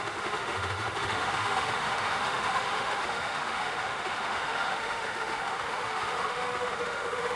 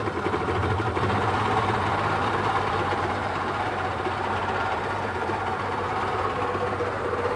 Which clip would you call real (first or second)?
second